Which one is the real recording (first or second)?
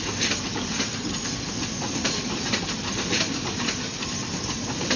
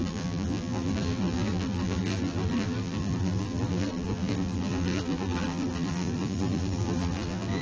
first